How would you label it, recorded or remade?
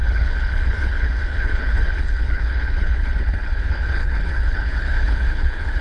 remade